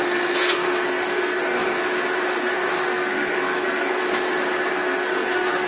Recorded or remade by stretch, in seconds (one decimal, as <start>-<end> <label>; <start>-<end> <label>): 0.0-0.4 recorded; 0.4-1.8 remade; 1.8-2.4 recorded; 2.4-4.0 remade; 4.0-4.7 recorded; 4.7-5.7 remade